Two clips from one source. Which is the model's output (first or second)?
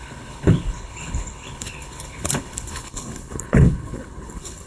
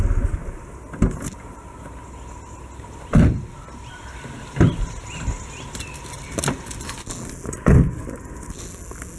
first